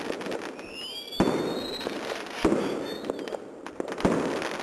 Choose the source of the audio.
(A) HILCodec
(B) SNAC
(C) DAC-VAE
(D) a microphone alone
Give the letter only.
D